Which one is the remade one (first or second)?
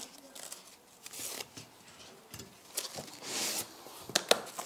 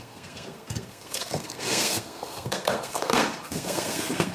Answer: second